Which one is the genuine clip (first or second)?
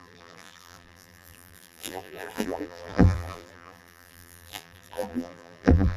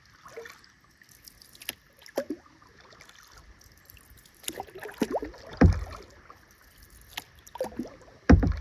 second